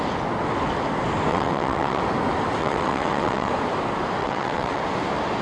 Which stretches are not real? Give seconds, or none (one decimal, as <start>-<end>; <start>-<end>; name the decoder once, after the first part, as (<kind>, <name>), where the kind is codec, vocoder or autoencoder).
1.3-2.0 (vocoder, WaveNeXt); 2.6-3.5; 4.2-4.8